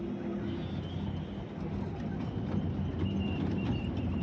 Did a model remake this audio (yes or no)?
no